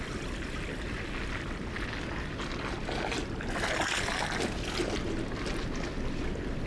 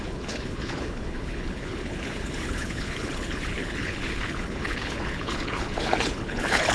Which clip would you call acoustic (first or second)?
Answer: first